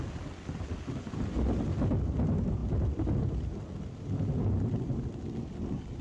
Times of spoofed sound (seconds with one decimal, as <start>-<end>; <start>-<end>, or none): none